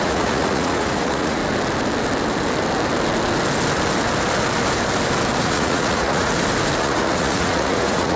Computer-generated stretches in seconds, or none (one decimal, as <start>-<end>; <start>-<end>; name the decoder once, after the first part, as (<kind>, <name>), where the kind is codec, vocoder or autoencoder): 0.0-1.4 (vocoder, Vocos); 5.4-6.3; 6.8-8.2